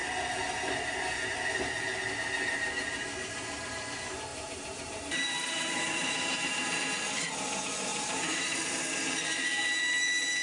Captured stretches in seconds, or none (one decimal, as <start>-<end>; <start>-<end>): 0.0-4.3; 6.8-7.9; 8.8-10.4